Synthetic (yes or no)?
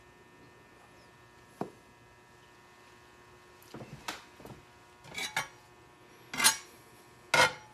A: no